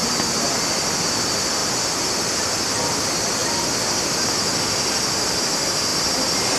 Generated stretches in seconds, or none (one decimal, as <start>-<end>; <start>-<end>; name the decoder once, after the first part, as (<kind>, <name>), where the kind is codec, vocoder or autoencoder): none

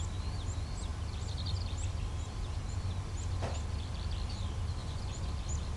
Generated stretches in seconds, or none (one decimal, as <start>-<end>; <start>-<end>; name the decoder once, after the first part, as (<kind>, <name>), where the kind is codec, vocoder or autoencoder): 4.8-5.3 (vocoder, Vocos)

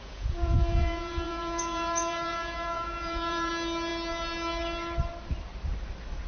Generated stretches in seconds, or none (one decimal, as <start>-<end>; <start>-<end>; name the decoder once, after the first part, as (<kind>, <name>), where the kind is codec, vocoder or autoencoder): 0.0-3.5 (vocoder, Vocos)

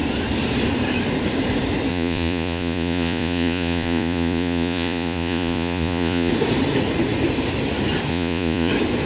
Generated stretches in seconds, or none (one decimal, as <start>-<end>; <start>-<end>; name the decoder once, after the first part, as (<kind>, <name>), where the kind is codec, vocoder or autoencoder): 1.9-6.3 (vocoder, Vocos); 8.1-8.7

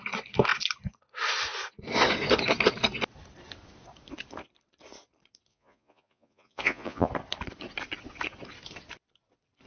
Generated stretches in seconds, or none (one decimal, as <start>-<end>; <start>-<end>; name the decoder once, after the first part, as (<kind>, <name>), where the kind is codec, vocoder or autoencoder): 5.5-7.1 (vocoder, Vocos)

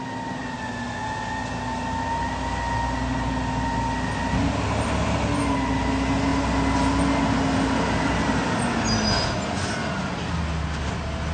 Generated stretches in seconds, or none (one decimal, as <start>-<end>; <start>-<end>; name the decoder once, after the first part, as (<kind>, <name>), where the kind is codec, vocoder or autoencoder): none

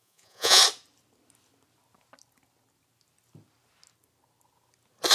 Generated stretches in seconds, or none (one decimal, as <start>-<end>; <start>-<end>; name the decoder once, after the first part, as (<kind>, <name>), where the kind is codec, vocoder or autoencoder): 0.0-0.6 (vocoder, Vocos)